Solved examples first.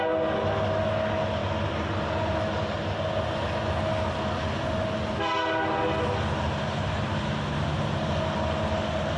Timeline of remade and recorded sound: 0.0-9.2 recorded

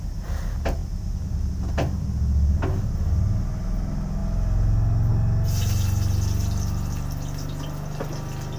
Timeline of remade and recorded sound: 0.0-8.6 recorded